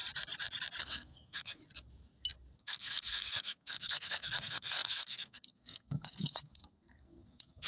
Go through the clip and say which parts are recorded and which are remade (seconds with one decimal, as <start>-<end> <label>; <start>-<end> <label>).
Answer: 0.0-0.8 recorded; 0.8-1.6 remade; 1.6-2.6 recorded; 2.6-7.7 remade